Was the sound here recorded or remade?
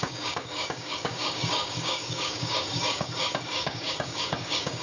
remade